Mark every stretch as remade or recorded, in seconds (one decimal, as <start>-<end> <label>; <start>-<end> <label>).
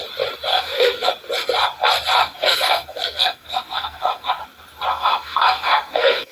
0.0-0.5 recorded; 0.5-1.1 remade; 1.1-2.2 recorded; 2.2-4.4 remade; 4.4-4.9 recorded; 4.9-6.3 remade